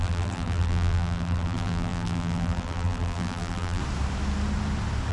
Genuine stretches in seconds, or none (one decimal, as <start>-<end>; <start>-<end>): 3.8-5.1